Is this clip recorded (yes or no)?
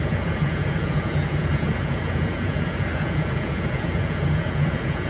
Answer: no